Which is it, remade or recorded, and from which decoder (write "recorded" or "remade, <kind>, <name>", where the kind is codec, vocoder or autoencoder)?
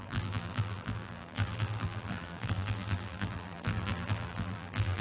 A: remade, vocoder, BigVGAN v2